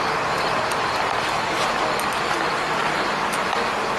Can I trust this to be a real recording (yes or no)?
yes